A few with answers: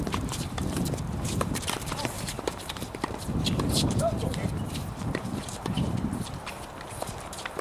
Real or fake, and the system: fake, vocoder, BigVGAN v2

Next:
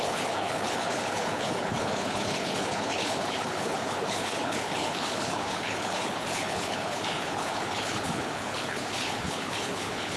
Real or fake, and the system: fake, codec, HILCodec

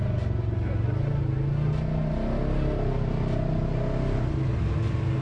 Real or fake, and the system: real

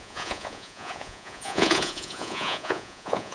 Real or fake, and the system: fake, vocoder, Vocos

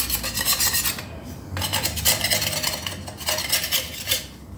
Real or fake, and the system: real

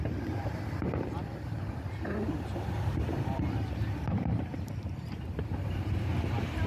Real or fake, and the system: fake, vocoder, BigVGAN v2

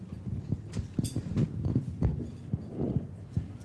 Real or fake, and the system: real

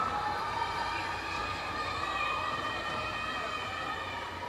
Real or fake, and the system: fake, vocoder, BigVGAN v2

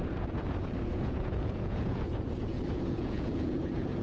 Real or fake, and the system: fake, vocoder, Vocos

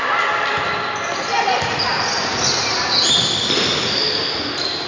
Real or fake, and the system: real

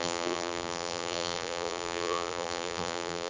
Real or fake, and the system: fake, vocoder, BigVGAN v2